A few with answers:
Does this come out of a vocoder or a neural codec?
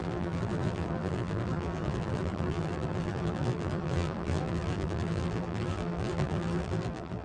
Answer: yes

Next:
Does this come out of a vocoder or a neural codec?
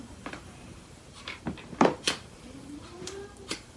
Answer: yes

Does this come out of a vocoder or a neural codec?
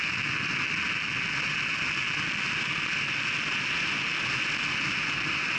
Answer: no